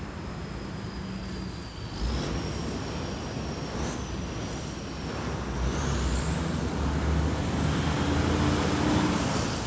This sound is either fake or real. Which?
real